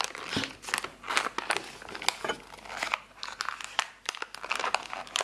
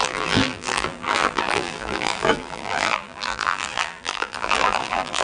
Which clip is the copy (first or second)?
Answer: second